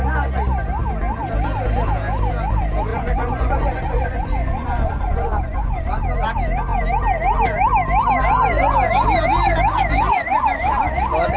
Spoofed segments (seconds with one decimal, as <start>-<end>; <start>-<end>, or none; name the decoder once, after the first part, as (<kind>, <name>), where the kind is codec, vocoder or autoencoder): 2.9-6.0 (vocoder, Vocos)